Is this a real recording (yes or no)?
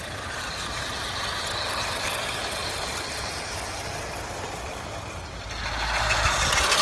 yes